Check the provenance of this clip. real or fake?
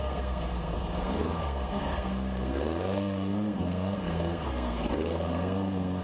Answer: fake